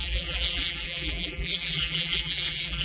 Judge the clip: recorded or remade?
remade